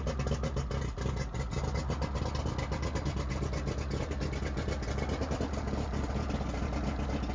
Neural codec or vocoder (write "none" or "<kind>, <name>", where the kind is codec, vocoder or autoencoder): none